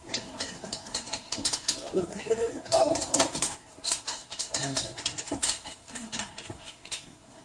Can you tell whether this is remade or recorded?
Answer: remade